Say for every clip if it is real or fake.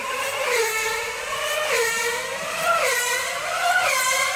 real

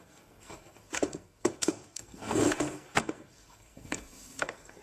fake